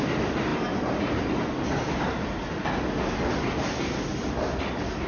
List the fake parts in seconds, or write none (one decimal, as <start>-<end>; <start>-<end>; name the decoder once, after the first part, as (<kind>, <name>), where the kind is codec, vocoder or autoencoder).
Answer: none